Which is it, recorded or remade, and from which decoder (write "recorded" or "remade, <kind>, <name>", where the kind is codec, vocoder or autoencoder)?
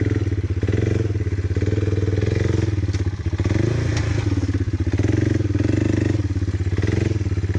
recorded